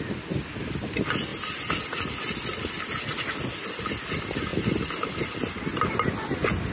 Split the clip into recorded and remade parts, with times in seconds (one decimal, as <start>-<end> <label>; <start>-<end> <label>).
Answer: 0.0-6.7 recorded